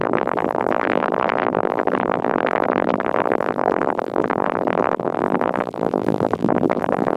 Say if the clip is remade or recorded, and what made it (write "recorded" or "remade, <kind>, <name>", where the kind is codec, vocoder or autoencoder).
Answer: remade, vocoder, BigVGAN v2